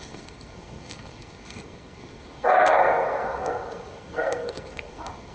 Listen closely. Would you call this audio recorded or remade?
remade